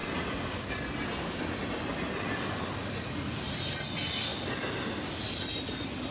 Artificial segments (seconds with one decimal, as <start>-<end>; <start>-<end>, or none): none